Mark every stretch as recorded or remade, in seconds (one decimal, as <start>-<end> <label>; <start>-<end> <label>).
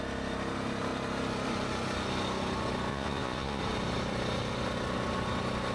0.0-2.9 recorded; 2.9-3.6 remade; 3.6-5.7 recorded